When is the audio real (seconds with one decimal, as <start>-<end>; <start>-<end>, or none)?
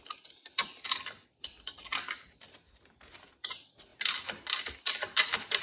3.9-4.9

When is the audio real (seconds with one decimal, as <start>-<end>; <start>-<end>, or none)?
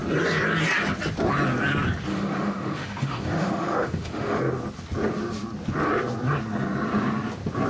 0.0-2.1; 4.4-7.7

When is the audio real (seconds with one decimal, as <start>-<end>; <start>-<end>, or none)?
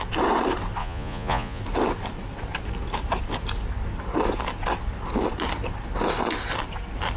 0.0-0.8; 1.6-7.2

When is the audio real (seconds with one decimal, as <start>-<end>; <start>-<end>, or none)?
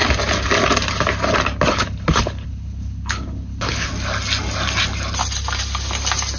0.0-1.7; 3.9-6.4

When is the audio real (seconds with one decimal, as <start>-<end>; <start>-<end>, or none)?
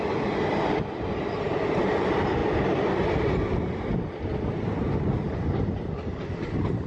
0.0-6.9